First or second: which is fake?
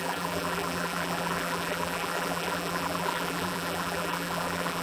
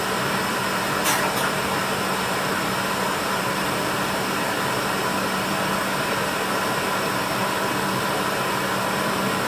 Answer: first